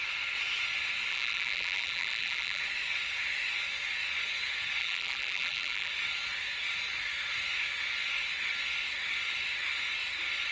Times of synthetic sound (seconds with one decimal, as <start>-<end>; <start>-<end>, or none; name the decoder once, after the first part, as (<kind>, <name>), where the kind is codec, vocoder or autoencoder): 1.1-2.6 (vocoder, BigVGAN v2); 4.8-5.9